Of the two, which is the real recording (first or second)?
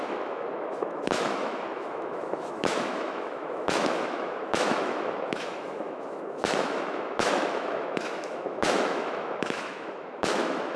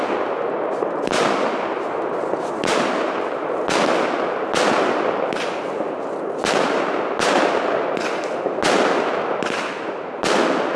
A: second